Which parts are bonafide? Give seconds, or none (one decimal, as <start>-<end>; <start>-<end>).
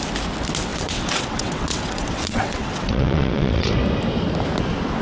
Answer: 0.0-0.7; 3.7-5.0